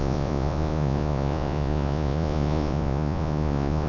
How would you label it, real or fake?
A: fake